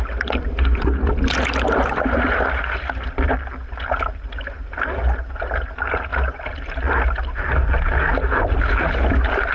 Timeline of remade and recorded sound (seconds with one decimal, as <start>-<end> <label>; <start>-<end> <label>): 0.0-9.5 recorded